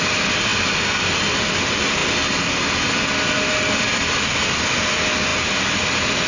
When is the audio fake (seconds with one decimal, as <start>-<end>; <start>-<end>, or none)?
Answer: none